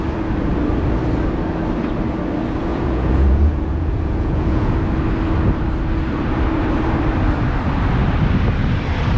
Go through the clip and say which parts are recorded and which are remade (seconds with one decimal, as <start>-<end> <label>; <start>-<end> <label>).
0.0-2.7 recorded; 2.7-4.7 remade; 4.7-9.2 recorded